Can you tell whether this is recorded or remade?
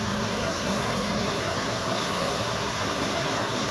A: remade